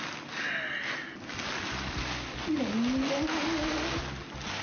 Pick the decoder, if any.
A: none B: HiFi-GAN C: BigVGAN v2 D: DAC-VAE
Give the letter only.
A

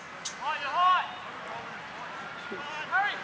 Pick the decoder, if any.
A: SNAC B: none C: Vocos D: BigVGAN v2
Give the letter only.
B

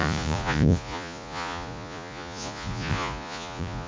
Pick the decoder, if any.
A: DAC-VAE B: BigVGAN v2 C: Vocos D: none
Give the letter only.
C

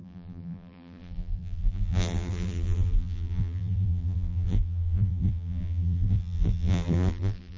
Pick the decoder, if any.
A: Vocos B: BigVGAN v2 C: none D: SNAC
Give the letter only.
B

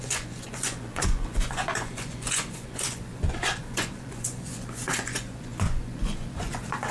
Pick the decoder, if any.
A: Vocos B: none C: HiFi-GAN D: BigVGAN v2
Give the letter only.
A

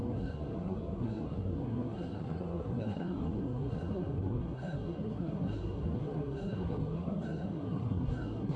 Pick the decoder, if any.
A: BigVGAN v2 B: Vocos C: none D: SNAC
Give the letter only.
D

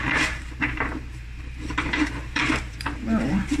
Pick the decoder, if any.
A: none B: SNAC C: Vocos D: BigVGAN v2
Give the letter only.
D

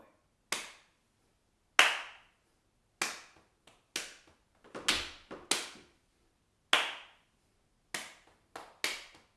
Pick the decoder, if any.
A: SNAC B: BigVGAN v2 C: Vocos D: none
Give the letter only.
D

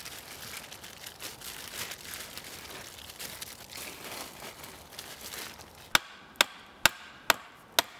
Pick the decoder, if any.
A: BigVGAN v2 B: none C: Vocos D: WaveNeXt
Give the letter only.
B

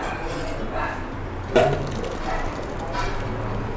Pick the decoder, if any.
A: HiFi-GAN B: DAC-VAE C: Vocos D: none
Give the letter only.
D